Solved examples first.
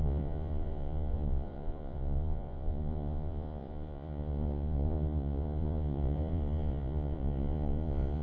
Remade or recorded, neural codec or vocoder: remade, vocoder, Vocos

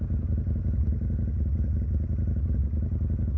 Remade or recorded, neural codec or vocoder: recorded